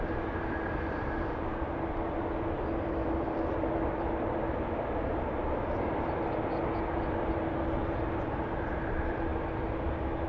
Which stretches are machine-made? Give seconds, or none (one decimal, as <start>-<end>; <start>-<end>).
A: 0.0-9.3